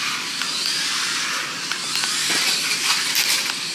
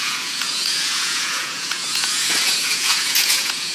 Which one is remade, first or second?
second